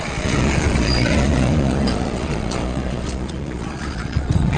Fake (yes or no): yes